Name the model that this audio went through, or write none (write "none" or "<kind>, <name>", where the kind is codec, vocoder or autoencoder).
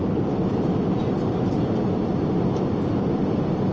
none